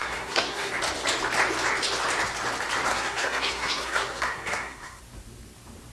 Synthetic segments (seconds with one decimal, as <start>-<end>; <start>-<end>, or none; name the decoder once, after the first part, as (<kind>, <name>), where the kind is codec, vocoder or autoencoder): 0.0-0.7 (codec, SNAC); 2.9-5.0